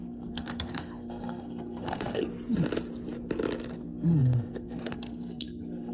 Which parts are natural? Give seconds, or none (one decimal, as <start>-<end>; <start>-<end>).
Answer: 2.3-3.7